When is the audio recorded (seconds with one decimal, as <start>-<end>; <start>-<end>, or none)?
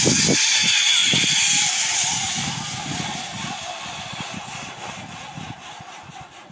0.0-6.5